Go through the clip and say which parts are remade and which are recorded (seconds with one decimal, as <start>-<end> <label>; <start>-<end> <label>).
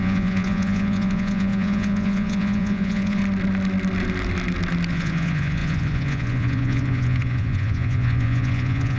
0.0-3.2 remade; 3.2-4.9 recorded; 4.9-9.0 remade